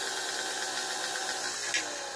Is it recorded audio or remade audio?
recorded